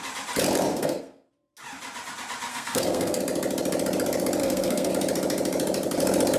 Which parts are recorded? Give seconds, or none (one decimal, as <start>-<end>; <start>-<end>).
0.0-0.7; 1.3-2.5; 3.2-4.4; 4.9-6.4